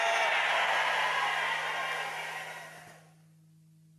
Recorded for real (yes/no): yes